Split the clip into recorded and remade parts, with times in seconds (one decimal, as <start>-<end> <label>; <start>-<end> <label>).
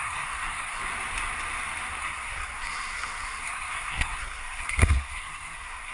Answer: 0.0-0.8 remade; 0.8-2.0 recorded; 2.0-5.9 remade